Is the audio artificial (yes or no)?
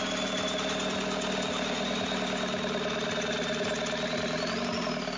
no